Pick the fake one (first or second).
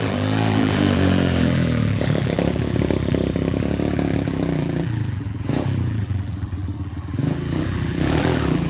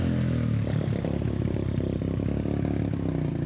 first